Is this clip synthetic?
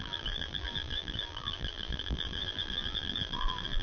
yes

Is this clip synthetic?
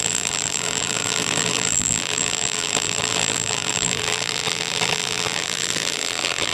yes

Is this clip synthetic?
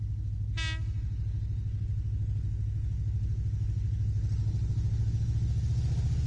no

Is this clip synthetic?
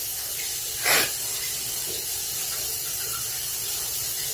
no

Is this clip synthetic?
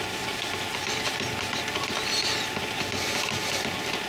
no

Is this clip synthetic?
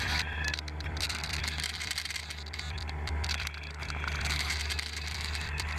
yes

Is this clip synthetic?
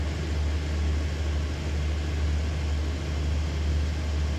no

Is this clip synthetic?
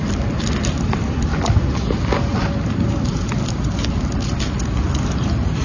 no